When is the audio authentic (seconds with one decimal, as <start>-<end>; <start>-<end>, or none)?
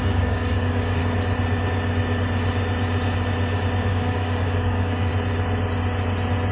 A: 1.0-3.9; 5.1-6.5